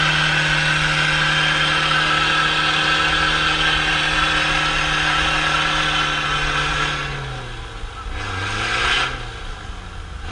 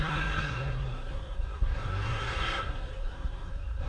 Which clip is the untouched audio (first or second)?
first